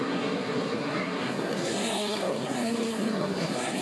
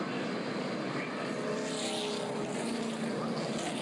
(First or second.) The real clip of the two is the second